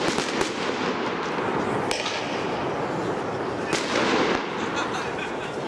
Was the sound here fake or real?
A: real